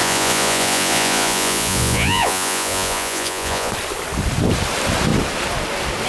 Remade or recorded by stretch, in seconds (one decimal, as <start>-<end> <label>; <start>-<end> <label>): 0.0-3.7 remade; 3.7-6.1 recorded